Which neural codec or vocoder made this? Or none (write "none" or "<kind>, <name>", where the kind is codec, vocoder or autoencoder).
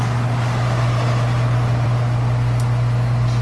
none